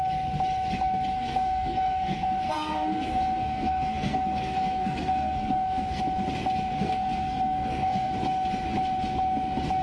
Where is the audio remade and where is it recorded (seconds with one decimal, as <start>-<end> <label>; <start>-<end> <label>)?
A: 0.0-1.1 recorded; 1.1-6.0 remade; 6.0-6.7 recorded; 6.7-8.1 remade; 8.1-9.8 recorded